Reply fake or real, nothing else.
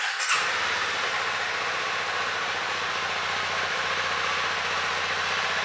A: real